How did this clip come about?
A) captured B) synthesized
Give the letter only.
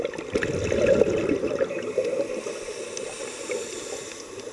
A